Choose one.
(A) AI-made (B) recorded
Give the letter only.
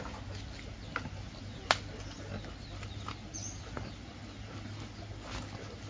B